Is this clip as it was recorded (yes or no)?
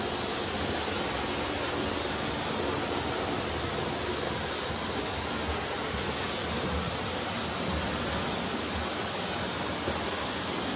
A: yes